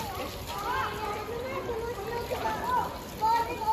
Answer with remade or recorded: recorded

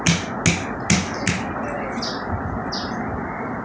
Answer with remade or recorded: recorded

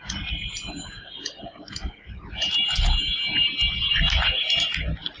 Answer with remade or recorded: recorded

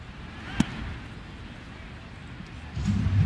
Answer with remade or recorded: recorded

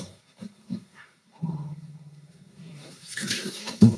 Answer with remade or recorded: remade